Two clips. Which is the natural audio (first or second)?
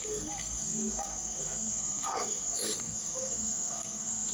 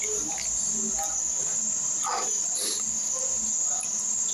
second